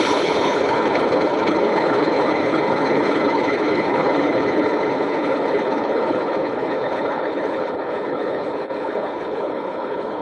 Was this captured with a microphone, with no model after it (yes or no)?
no